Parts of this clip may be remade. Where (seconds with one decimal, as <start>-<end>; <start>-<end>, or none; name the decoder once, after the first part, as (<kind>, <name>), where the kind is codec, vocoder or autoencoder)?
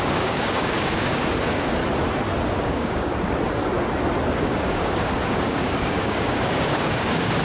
0.0-1.8 (codec, DAC); 2.5-3.1; 4.3-7.4